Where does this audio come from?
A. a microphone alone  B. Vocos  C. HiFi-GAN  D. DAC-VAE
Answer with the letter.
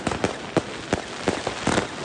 A